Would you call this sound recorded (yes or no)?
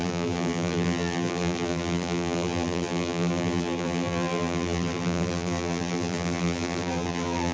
no